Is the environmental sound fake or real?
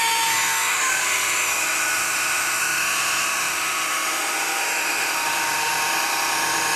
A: fake